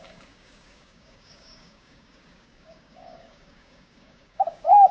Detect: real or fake fake